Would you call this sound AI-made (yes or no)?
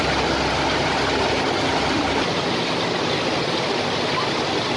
no